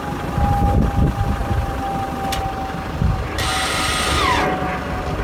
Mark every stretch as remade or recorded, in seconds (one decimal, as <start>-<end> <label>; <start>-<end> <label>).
0.0-5.2 recorded